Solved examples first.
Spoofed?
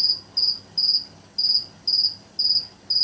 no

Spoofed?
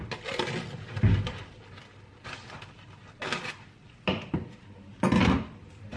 no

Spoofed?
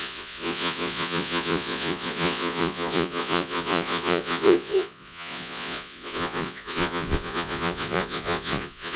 yes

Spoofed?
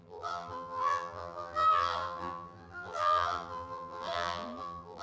yes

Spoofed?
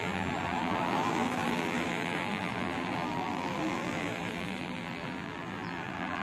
yes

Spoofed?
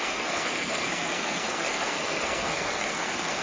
yes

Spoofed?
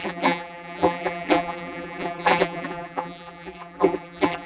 yes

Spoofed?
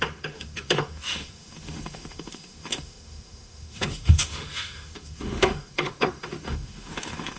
yes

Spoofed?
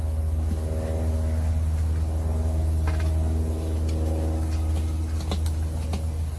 no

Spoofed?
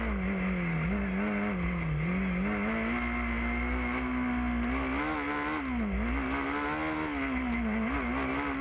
no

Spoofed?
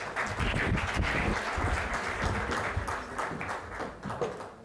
no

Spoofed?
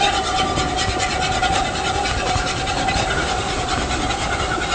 no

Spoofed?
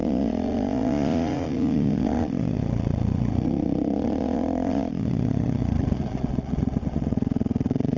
yes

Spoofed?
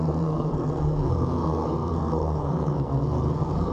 yes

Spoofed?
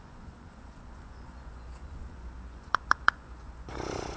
yes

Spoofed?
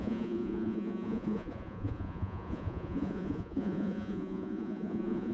yes